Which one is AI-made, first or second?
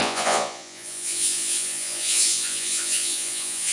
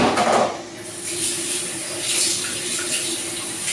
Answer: first